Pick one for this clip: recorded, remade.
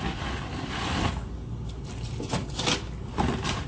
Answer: recorded